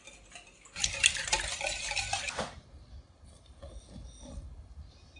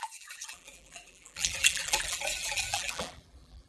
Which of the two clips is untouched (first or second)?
first